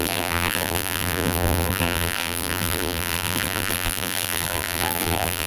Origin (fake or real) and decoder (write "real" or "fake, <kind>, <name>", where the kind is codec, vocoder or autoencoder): fake, vocoder, BigVGAN v2